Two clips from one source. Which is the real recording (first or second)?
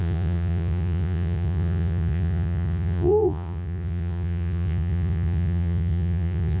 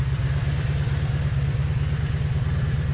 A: second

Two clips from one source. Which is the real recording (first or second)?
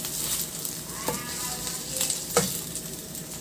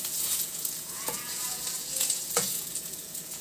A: first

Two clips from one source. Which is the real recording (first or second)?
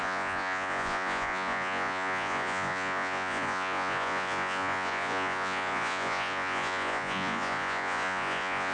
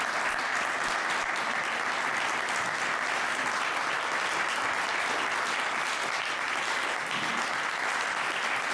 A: second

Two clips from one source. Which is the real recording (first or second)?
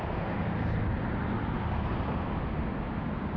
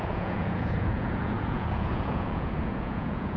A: first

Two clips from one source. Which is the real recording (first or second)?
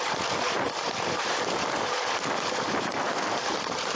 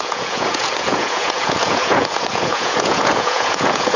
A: first